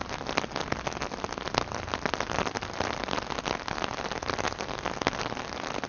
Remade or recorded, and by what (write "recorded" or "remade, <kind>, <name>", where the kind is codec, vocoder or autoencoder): recorded